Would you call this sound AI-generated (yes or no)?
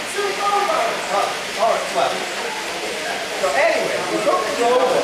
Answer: no